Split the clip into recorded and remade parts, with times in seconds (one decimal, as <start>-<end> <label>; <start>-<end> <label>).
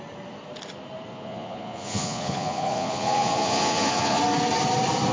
0.0-1.1 recorded; 1.1-4.2 remade; 4.2-5.1 recorded